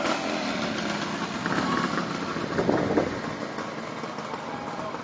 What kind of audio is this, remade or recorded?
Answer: recorded